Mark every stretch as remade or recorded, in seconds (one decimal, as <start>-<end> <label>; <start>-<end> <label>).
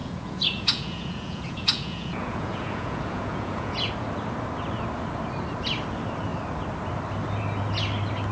0.0-3.9 remade; 3.9-8.3 recorded